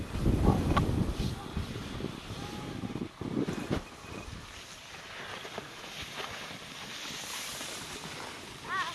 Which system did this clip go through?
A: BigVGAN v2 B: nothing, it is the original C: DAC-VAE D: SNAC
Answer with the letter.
B